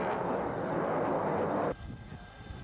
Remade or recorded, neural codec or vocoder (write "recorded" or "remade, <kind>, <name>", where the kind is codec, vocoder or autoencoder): recorded